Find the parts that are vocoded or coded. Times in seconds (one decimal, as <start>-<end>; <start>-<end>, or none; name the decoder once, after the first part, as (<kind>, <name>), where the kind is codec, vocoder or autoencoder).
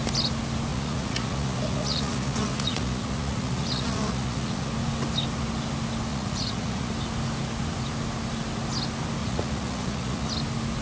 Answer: 0.7-4.7 (vocoder, Vocos); 6.1-6.9; 9.2-10.3